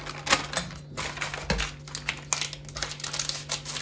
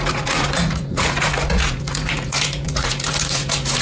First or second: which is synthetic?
second